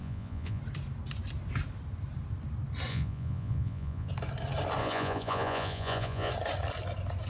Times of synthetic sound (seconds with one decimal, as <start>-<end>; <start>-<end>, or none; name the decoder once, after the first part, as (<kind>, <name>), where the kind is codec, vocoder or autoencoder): 0.0-0.6 (vocoder, Vocos); 2.9-4.1; 4.8-6.3